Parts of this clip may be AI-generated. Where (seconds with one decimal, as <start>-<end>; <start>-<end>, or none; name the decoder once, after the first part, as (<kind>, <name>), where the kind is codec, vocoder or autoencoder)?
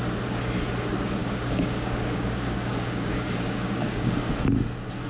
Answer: 1.2-4.3 (codec, DAC)